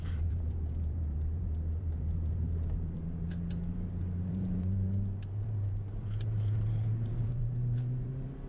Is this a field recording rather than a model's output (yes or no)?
no